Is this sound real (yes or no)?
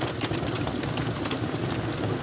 yes